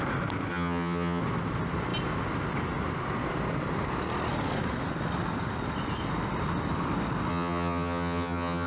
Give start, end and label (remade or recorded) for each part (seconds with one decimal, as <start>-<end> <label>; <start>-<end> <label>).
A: 0.0-0.5 recorded; 0.5-1.2 remade; 1.2-7.3 recorded; 7.3-8.7 remade